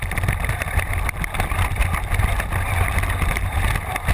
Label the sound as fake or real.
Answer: real